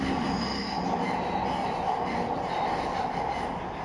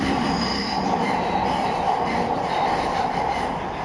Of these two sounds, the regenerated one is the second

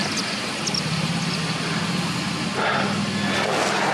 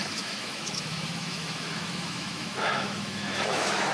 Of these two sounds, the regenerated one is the second